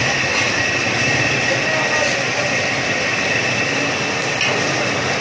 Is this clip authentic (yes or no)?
yes